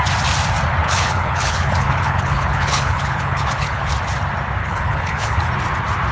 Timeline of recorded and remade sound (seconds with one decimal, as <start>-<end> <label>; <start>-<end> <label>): 0.0-0.8 recorded; 0.8-3.9 remade; 3.9-4.6 recorded; 4.6-5.5 remade; 5.5-6.1 recorded

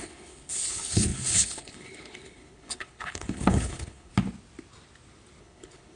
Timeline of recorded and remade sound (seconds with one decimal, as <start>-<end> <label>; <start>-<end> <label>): 0.0-4.1 remade; 4.1-5.4 recorded; 5.4-6.0 remade

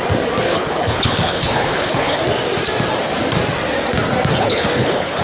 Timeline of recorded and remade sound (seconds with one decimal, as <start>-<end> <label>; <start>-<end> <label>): 0.0-0.5 recorded; 0.5-2.2 remade; 2.2-4.3 recorded; 4.3-5.2 remade

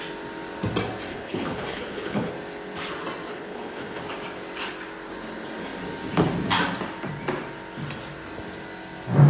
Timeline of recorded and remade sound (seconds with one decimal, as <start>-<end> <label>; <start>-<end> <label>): 0.0-1.1 recorded; 1.1-2.3 remade; 2.3-3.3 recorded; 3.3-4.0 remade; 4.0-9.3 recorded

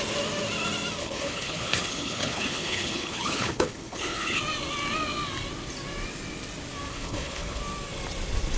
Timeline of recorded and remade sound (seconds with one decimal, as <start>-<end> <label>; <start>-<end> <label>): 0.0-1.0 recorded; 1.0-4.4 remade; 4.4-6.9 recorded; 6.9-7.6 remade; 7.6-8.6 recorded

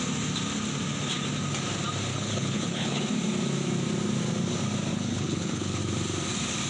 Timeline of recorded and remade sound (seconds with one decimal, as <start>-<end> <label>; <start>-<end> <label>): 0.0-2.1 recorded; 2.1-3.0 remade; 3.0-4.9 recorded; 4.9-5.8 remade; 5.8-6.7 recorded